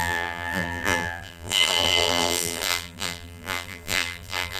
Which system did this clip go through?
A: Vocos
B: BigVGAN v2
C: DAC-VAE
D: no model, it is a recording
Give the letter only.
B